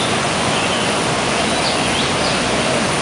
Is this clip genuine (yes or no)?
no